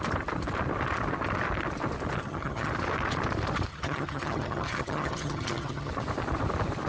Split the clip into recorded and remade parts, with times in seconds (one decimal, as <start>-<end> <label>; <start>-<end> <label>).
0.0-2.2 recorded; 2.2-2.7 remade; 2.7-3.7 recorded; 3.7-5.9 remade; 5.9-6.9 recorded